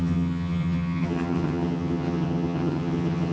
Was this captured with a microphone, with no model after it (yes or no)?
no